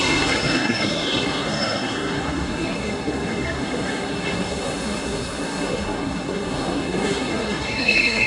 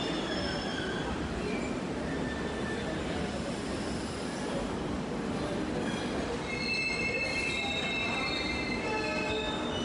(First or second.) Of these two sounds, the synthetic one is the first